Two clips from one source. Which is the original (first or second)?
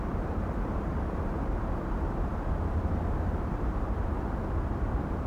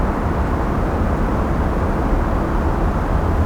second